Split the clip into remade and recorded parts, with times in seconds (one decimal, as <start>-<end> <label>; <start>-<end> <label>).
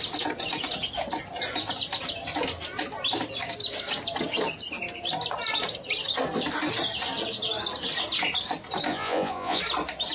0.0-8.9 recorded; 8.9-9.6 remade; 9.6-10.1 recorded